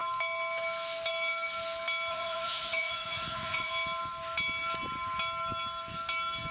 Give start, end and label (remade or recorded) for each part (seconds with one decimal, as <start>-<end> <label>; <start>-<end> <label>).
0.0-2.1 recorded; 2.1-3.7 remade; 3.7-6.5 recorded